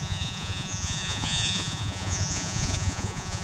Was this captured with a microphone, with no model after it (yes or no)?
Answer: no